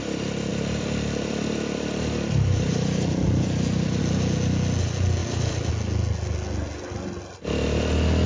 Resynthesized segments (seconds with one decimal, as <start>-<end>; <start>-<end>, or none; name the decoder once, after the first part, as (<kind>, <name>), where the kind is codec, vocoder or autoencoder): 0.5-4.0 (vocoder, BigVGAN v2)